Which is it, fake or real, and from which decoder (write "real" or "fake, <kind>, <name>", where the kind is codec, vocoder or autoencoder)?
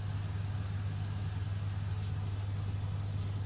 real